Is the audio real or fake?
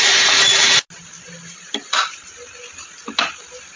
real